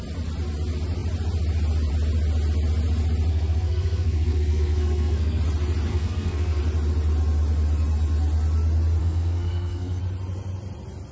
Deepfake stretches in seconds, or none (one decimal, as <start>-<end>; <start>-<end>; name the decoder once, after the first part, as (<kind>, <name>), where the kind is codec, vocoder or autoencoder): 3.3-5.4 (codec, SNAC); 5.9-6.6; 9.0-10.0